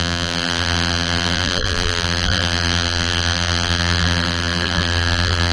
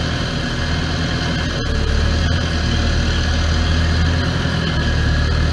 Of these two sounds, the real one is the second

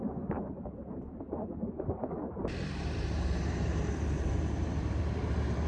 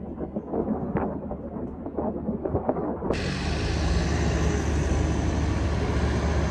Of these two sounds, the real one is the second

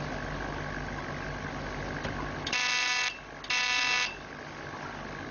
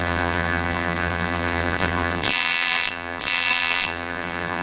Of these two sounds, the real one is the first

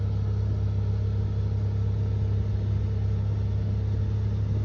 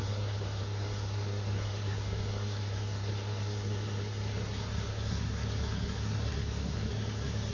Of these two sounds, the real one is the first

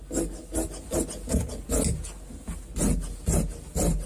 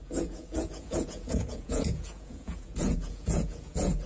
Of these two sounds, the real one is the first